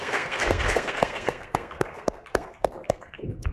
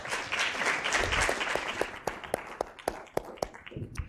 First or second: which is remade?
first